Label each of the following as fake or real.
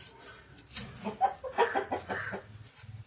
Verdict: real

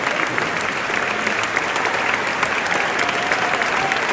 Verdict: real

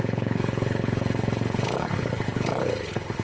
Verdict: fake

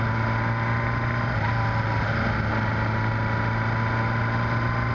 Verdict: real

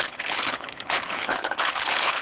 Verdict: fake